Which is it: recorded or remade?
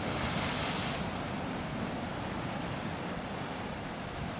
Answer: recorded